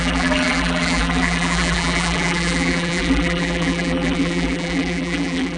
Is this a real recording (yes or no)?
no